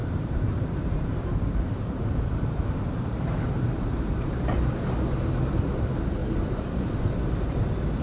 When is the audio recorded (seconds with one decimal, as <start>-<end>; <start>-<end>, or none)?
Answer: 4.4-6.2; 7.1-8.0